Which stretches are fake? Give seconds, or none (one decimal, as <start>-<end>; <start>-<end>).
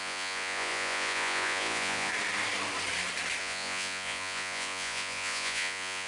0.0-2.1; 3.4-6.1